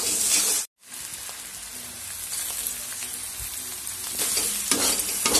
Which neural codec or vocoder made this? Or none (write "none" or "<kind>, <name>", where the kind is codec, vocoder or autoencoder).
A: none